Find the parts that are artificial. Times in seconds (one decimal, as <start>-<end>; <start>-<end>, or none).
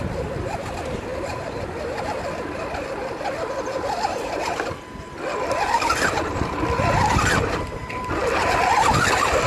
0.0-7.8; 8.8-9.5